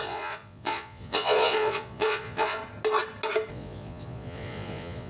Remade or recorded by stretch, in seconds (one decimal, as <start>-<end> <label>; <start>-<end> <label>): 0.0-2.6 remade; 2.6-3.5 recorded; 3.5-5.1 remade